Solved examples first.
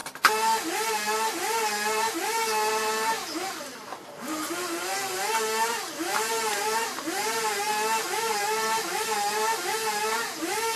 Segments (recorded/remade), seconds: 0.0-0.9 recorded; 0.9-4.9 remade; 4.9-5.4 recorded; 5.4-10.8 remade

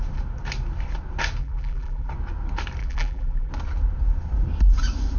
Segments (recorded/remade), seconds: 0.0-1.4 recorded; 1.4-2.1 remade; 2.1-2.8 recorded; 2.8-3.5 remade; 3.5-5.2 recorded

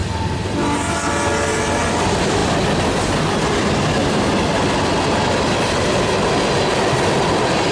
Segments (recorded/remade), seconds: 0.0-7.7 recorded

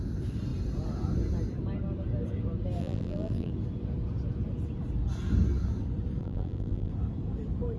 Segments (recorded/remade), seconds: 0.0-2.8 recorded; 2.8-3.5 remade; 3.5-6.2 recorded; 6.2-6.9 remade; 6.9-7.8 recorded

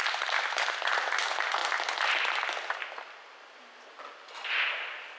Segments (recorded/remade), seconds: 0.0-5.2 recorded

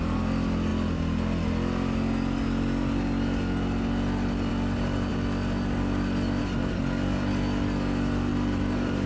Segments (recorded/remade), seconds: 0.0-8.3 recorded; 8.3-9.1 remade

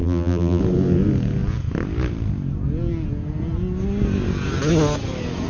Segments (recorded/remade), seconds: 0.0-0.6 remade; 0.6-5.5 recorded